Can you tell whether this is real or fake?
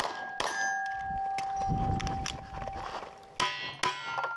real